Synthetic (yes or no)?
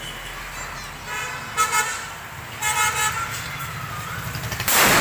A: no